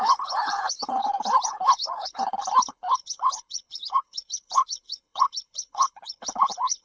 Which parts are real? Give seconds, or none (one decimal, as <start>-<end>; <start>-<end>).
none